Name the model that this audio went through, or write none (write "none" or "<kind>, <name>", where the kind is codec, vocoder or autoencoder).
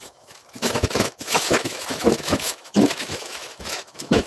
autoencoder, DAC-VAE